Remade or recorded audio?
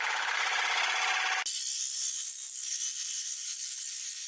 recorded